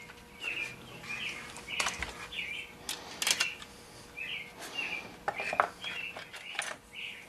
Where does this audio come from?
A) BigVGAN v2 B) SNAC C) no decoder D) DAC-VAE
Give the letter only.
C